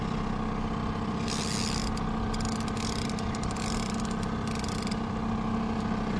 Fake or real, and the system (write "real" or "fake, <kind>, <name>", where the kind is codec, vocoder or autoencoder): real